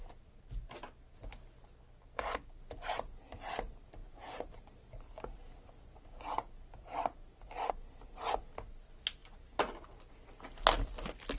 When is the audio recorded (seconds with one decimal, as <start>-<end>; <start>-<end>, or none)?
0.0-11.4